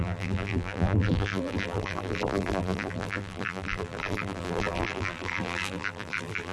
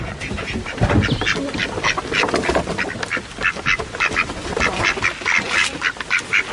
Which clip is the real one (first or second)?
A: second